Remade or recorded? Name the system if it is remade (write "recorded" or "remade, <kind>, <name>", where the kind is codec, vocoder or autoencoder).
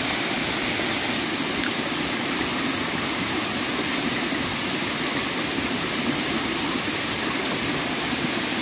recorded